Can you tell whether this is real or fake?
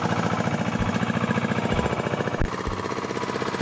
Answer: real